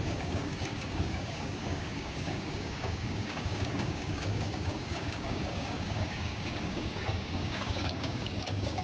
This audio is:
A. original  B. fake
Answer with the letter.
B